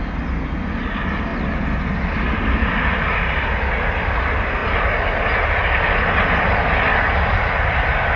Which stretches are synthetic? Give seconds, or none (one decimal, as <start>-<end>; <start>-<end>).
none